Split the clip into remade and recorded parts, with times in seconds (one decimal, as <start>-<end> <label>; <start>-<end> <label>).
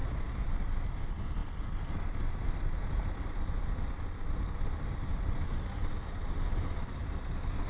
0.0-0.5 remade; 0.5-7.7 recorded